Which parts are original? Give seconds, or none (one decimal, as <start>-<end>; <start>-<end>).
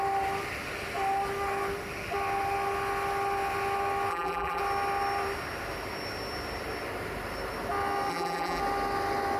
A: 0.0-4.1; 4.6-8.1; 8.6-9.4